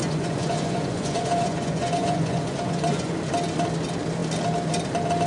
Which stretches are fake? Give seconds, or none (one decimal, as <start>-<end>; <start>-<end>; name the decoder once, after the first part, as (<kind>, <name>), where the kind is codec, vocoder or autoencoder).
0.0-3.1 (vocoder, Vocos)